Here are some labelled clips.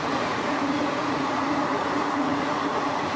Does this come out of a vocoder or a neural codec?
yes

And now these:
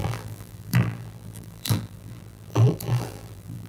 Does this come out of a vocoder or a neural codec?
yes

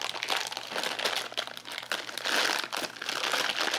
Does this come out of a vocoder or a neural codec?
no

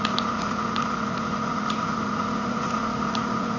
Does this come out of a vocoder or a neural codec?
yes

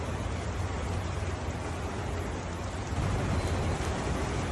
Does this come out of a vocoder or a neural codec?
no